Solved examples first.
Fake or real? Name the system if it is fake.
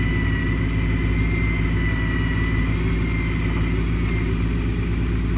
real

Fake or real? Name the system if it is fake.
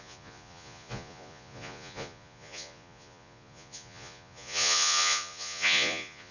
fake, vocoder, Vocos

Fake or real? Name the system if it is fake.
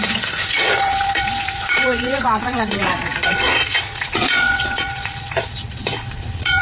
fake, vocoder, Vocos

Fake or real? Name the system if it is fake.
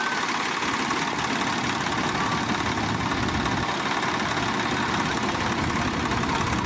real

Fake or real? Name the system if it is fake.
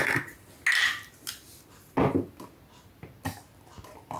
real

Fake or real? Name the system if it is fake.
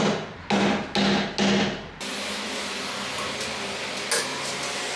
real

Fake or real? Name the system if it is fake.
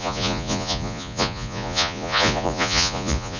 fake, vocoder, Vocos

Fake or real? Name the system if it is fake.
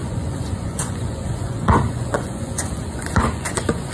fake, vocoder, Vocos